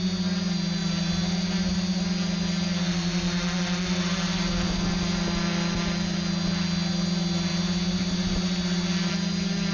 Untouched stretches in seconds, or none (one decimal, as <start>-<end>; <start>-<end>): 0.0-9.7